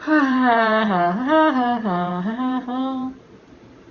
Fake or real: fake